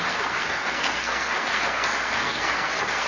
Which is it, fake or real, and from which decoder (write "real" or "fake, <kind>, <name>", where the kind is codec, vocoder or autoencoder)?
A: fake, codec, SNAC